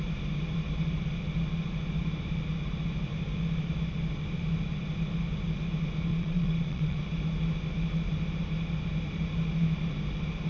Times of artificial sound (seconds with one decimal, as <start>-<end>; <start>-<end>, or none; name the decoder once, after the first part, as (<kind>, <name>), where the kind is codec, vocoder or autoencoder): 6.1-7.0 (vocoder, Vocos)